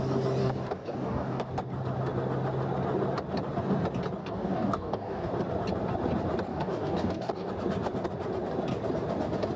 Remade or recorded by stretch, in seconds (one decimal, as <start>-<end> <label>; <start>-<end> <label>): 0.0-0.4 recorded; 0.4-1.5 remade; 1.5-4.2 recorded; 4.2-5.3 remade; 5.3-6.5 recorded; 6.5-7.5 remade; 7.5-9.6 recorded